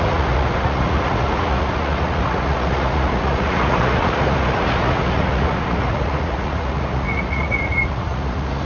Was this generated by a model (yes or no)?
yes